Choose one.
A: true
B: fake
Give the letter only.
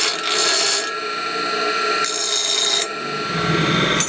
A